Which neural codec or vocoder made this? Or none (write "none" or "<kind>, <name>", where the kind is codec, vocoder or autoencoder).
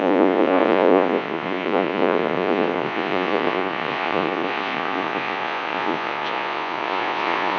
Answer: vocoder, Vocos